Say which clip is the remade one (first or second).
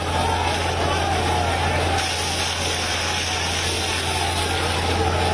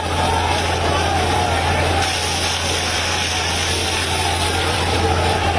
second